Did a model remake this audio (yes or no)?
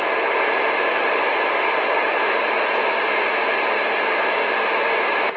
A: no